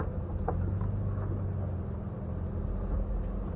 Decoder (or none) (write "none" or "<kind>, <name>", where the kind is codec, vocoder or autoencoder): none